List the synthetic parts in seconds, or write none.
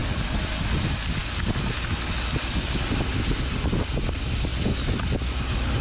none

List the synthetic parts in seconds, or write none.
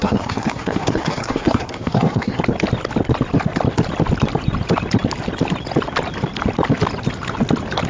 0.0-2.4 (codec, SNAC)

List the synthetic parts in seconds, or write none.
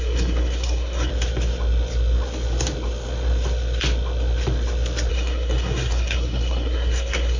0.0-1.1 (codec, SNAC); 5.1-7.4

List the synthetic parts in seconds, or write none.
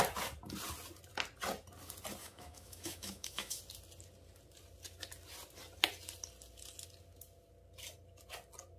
2.2-3.6 (autoencoder, DAC-VAE)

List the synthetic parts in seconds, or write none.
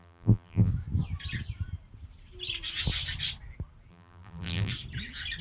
0.0-0.7 (vocoder, BigVGAN v2); 3.9-4.7